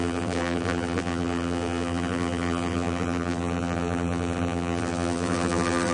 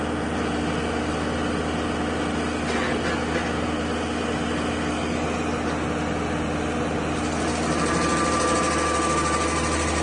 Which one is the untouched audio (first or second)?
second